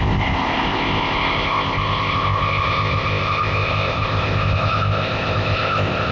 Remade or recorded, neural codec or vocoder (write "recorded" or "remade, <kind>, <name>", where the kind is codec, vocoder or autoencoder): remade, codec, ZipCodec